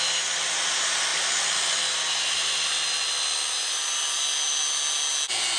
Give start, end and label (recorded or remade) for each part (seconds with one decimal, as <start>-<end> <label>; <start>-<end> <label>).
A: 0.0-5.6 recorded